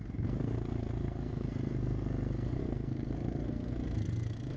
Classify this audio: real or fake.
fake